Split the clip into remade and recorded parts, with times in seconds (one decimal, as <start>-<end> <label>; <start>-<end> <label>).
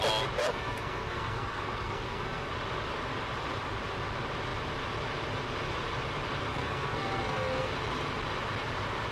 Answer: 0.0-0.4 recorded; 0.4-2.5 remade; 2.5-6.5 recorded; 6.5-7.7 remade; 7.7-9.1 recorded